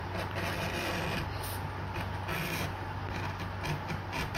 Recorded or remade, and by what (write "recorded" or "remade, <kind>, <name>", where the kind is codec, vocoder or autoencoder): recorded